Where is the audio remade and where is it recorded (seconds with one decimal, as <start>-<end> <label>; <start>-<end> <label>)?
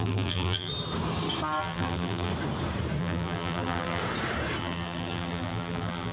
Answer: 0.0-0.7 remade; 0.7-1.6 recorded; 1.6-2.3 remade; 2.3-3.0 recorded; 3.0-4.0 remade; 4.0-4.6 recorded; 4.6-6.1 remade